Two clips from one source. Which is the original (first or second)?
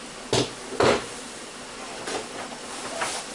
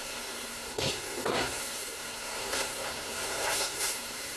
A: first